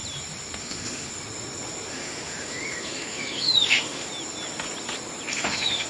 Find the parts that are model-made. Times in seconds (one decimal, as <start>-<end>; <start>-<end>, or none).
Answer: 0.6-1.1; 1.9-4.1; 5.3-5.9